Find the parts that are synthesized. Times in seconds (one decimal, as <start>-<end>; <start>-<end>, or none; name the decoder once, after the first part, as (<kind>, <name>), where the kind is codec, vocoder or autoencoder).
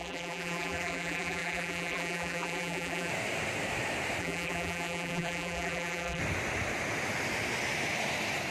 0.0-3.1 (vocoder, BigVGAN v2); 4.2-6.2